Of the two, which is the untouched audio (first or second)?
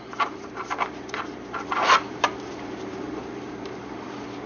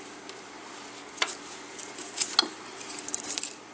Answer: second